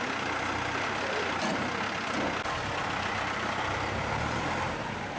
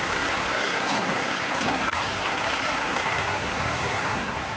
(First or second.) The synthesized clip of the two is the second